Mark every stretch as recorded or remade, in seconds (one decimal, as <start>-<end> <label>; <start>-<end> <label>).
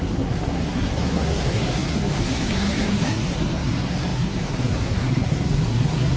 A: 0.0-6.2 remade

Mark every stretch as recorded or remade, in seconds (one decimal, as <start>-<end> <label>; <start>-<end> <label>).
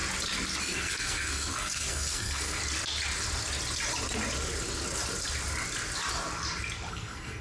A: 0.0-0.6 recorded; 0.6-2.6 remade; 2.6-6.9 recorded; 6.9-7.4 remade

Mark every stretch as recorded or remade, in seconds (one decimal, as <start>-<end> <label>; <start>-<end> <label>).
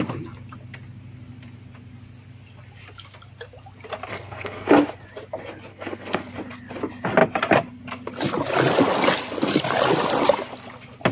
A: 0.0-4.1 recorded; 4.1-4.7 remade; 4.7-5.7 recorded; 5.7-6.3 remade; 6.3-11.1 recorded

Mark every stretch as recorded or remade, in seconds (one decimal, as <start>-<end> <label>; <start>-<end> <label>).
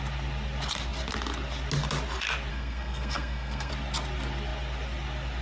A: 0.0-2.5 recorded; 2.5-3.7 remade; 3.7-5.4 recorded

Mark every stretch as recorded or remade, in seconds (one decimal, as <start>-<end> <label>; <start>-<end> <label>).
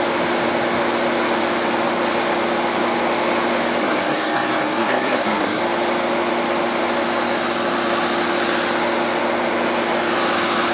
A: 0.0-3.8 recorded; 3.8-5.6 remade; 5.6-10.7 recorded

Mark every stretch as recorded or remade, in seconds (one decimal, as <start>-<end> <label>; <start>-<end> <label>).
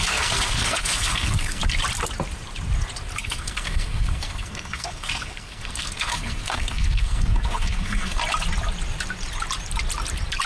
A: 0.0-1.6 remade; 1.6-3.2 recorded; 3.2-8.2 remade; 8.2-10.5 recorded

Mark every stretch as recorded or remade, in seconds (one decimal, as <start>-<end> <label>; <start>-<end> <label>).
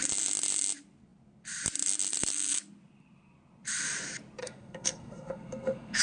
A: 0.0-4.4 recorded; 4.4-6.0 remade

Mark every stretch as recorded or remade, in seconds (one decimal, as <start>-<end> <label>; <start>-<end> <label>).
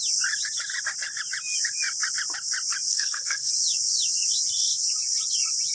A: 0.0-2.9 recorded; 2.9-3.5 remade; 3.5-5.7 recorded